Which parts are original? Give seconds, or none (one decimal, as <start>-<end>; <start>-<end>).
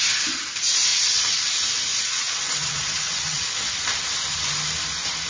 0.0-0.9; 1.4-1.9; 3.7-5.3